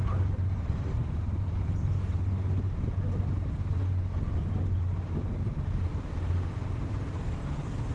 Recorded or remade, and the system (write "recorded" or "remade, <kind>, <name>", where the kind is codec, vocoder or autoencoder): recorded